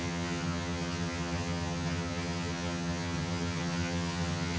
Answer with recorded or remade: remade